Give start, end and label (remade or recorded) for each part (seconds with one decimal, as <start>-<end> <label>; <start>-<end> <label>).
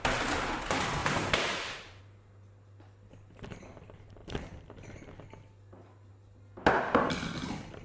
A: 0.0-1.0 recorded; 1.0-2.0 remade; 2.0-7.8 recorded